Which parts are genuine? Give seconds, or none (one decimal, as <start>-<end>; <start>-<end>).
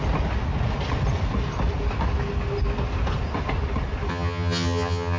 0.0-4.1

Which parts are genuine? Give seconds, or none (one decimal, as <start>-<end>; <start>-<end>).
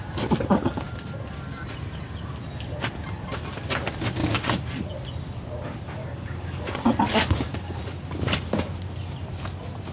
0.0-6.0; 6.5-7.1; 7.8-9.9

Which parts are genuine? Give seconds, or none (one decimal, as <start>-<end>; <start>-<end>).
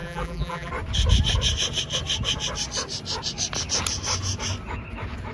0.7-5.3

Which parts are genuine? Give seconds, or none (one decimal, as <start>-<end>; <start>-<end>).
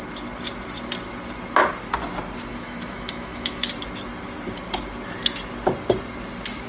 0.0-2.5; 3.7-6.7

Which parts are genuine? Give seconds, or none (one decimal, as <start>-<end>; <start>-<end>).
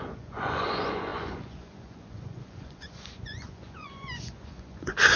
none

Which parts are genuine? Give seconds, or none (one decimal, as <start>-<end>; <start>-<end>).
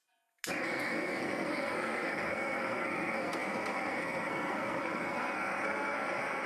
0.0-0.6